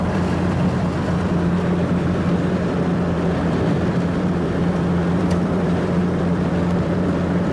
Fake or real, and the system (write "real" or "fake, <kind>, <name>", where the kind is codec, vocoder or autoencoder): fake, vocoder, BigVGAN v2